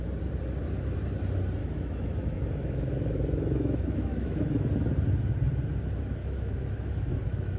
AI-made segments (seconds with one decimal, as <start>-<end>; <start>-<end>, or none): 1.6-4.7; 6.2-7.6